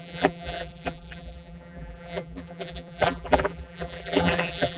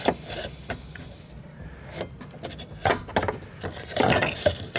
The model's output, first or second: first